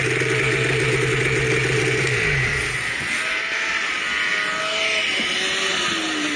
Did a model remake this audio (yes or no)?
no